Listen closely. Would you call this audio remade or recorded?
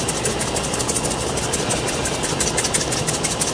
recorded